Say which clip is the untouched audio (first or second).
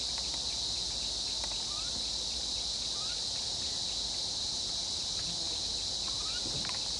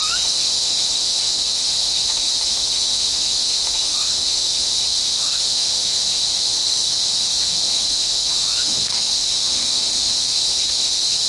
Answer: first